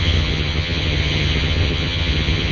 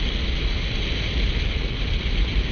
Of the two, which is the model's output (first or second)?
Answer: first